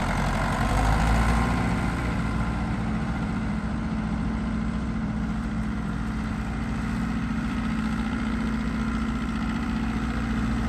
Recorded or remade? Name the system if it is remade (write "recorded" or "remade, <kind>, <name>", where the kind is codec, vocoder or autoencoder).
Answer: remade, vocoder, BigVGAN v2